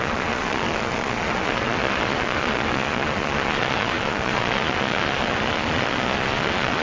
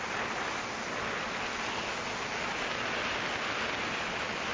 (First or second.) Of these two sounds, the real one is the second